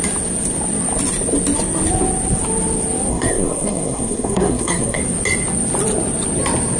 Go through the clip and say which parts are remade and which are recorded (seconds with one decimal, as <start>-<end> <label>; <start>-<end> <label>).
0.0-3.1 recorded; 3.1-5.0 remade; 5.0-6.8 recorded